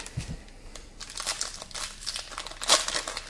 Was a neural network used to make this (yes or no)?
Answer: no